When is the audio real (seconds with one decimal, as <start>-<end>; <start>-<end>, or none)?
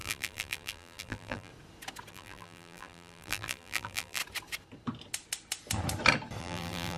1.5-2.1; 4.2-6.4